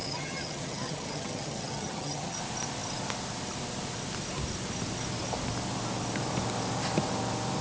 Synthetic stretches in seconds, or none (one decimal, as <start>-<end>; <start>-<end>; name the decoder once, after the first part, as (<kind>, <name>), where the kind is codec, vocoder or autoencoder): 0.0-2.4 (vocoder, HiFi-GAN)